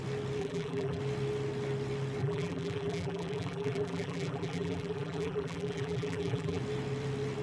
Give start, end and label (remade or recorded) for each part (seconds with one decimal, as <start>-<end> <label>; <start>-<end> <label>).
0.0-0.4 recorded; 0.4-1.0 remade; 1.0-2.2 recorded; 2.2-6.6 remade; 6.6-7.4 recorded

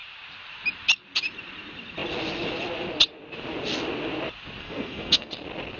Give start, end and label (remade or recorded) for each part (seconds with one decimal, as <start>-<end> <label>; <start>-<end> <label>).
0.0-4.6 recorded; 4.6-5.3 remade; 5.3-5.8 recorded

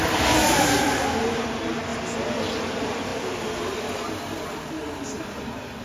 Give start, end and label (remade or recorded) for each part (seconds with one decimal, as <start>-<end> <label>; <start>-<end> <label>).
0.0-1.3 remade; 1.3-3.1 recorded; 3.1-4.5 remade; 4.5-5.8 recorded

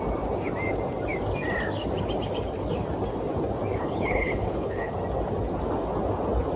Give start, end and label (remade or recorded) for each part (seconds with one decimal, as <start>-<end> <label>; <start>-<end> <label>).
0.0-3.8 recorded; 3.8-4.9 remade; 4.9-6.6 recorded